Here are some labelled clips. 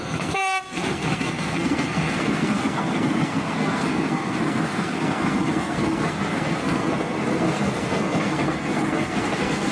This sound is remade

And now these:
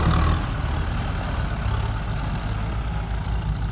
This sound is recorded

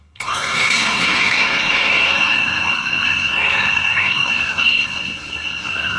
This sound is remade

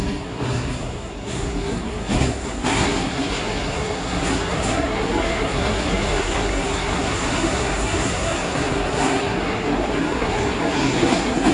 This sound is remade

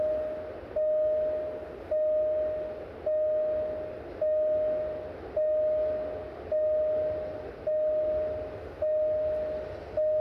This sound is recorded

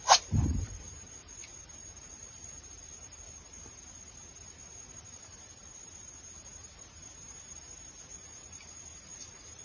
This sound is recorded